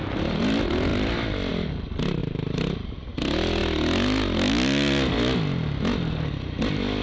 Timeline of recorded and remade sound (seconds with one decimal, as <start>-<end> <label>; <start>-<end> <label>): 0.0-7.0 recorded